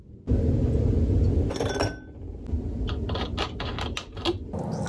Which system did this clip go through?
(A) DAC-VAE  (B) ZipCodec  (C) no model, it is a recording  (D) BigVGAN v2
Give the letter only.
C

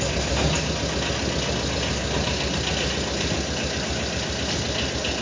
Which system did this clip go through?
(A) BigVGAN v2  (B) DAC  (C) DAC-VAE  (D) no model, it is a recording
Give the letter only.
D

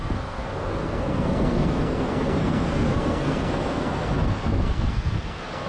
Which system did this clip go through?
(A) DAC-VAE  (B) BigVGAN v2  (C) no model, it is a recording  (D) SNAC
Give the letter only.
D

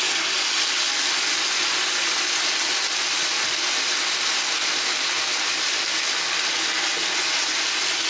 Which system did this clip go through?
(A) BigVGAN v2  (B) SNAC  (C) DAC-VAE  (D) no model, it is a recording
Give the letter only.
D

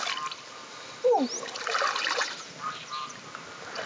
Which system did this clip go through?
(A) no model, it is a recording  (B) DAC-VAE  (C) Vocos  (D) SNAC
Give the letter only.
A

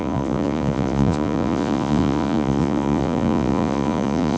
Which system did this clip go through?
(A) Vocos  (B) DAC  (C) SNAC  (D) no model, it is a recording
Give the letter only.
A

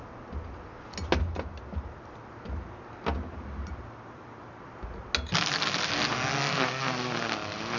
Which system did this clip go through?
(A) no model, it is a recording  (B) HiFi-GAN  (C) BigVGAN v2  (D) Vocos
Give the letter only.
A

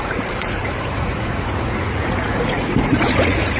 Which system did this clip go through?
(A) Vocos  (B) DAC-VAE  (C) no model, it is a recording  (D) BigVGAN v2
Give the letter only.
A